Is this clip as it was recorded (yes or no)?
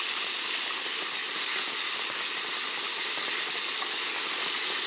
yes